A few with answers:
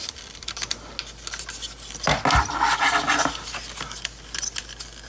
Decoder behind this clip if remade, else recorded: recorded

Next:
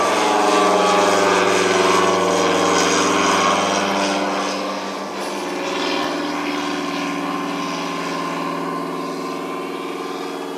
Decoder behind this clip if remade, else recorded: recorded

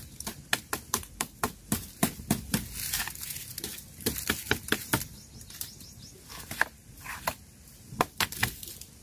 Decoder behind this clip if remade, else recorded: recorded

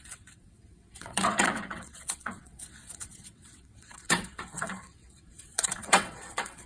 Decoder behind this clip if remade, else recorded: remade, vocoder, WaveNeXt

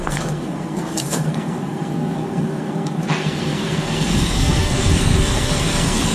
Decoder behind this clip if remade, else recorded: remade, codec, SNAC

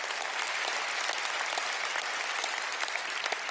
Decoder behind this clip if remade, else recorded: recorded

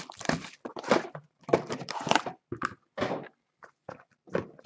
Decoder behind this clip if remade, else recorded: remade, vocoder, BigVGAN v2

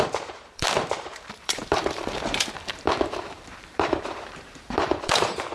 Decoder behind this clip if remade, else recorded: remade, vocoder, BigVGAN v2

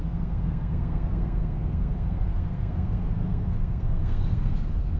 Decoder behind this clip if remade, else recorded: remade, codec, SNAC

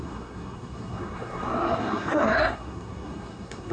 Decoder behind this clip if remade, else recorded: remade, codec, SNAC